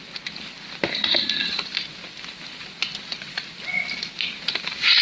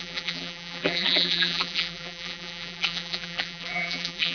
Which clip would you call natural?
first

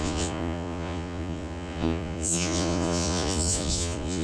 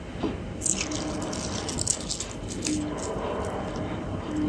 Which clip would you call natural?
second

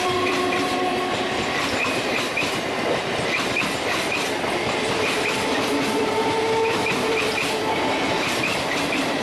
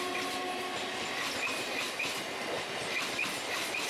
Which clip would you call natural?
second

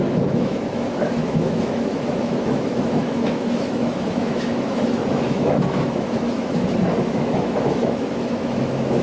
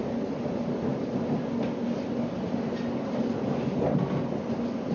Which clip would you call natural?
second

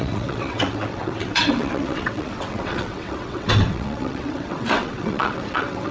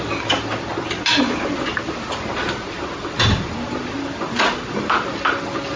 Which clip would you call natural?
second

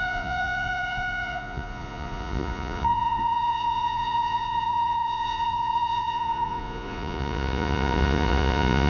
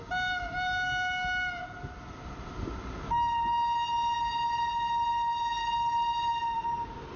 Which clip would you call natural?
second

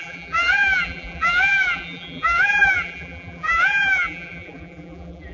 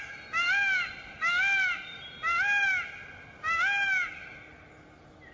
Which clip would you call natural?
second